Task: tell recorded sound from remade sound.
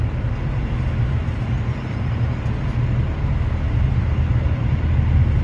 recorded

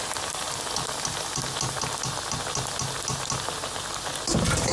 recorded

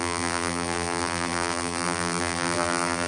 remade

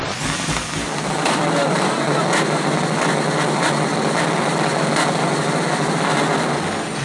recorded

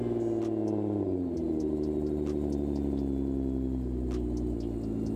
recorded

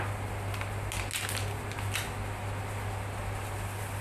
recorded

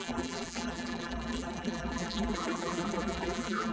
remade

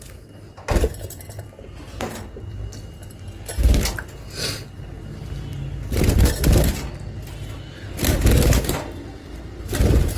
recorded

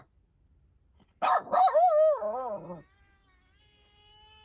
recorded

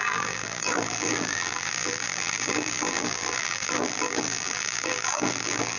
remade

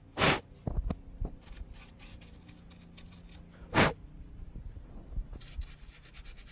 recorded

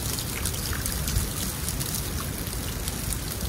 recorded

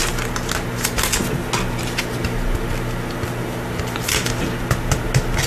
recorded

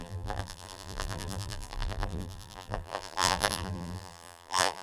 remade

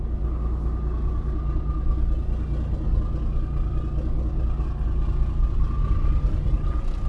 recorded